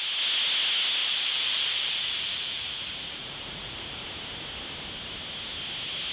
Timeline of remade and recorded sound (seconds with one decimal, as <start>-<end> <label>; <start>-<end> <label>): 0.0-1.0 recorded; 1.0-4.0 remade; 4.0-6.1 recorded